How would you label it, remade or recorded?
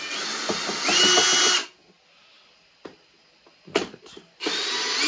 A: recorded